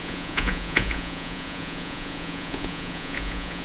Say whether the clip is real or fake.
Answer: fake